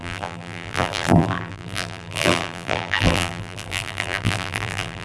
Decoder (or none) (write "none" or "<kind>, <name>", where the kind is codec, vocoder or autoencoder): vocoder, BigVGAN v2